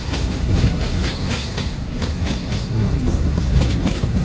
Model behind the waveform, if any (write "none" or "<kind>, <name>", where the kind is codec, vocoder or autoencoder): codec, SNAC